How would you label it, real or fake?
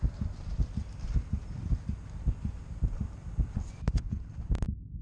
real